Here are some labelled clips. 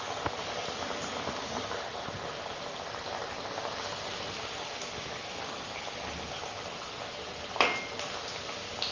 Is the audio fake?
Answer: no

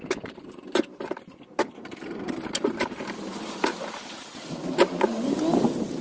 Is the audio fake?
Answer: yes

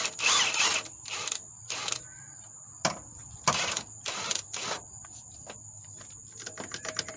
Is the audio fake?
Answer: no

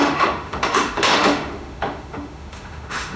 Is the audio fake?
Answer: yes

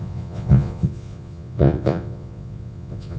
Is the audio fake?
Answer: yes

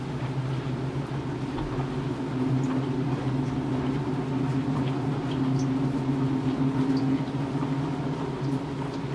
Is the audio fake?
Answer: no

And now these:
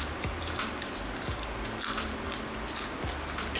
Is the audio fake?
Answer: no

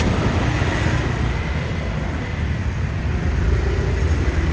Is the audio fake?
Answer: yes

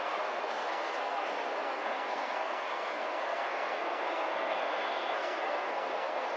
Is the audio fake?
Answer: yes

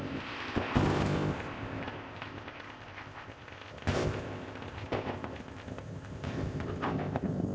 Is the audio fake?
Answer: yes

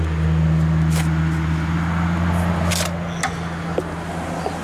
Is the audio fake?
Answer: no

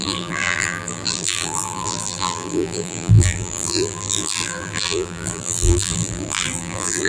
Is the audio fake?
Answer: yes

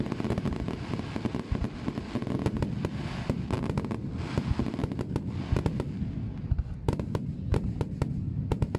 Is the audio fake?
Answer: no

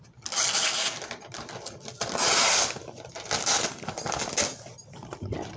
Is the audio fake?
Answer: no